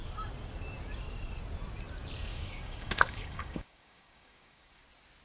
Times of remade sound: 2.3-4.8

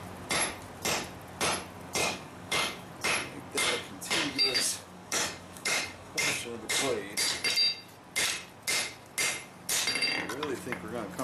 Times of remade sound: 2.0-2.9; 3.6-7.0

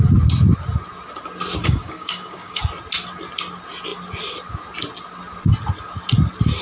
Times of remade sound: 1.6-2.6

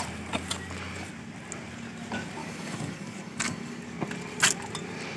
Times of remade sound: 2.4-3.8

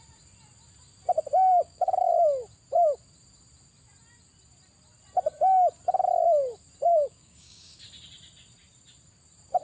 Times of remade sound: 1.5-2.1; 6.9-7.8